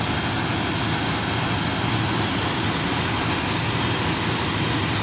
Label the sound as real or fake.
real